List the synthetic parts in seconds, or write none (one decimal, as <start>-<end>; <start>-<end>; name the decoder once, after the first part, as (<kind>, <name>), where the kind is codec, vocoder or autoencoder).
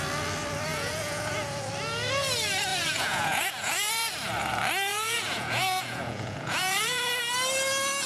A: 0.7-1.7 (vocoder, Vocos); 2.7-3.9; 4.9-7.2